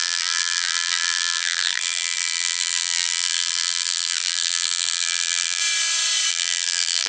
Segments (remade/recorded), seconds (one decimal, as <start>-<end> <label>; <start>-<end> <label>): 0.0-5.6 remade; 5.6-6.3 recorded; 6.3-7.1 remade